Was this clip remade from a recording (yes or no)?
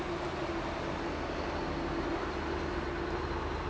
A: no